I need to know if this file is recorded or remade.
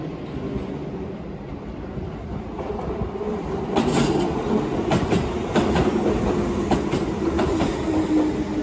recorded